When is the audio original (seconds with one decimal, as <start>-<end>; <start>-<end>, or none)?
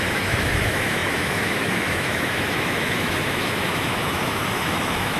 none